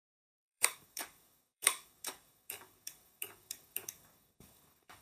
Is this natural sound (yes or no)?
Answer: no